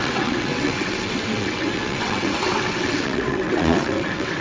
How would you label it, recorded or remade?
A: remade